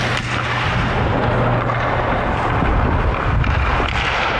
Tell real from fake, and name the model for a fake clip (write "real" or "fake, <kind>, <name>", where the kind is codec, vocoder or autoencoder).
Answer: real